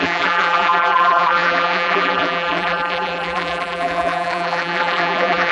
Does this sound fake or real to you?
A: fake